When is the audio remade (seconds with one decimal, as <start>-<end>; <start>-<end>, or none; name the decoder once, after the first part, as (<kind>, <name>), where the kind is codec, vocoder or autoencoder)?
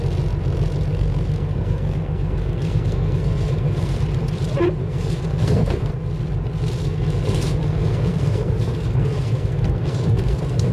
0.9-4.0 (codec, SNAC); 4.8-5.9; 6.8-10.7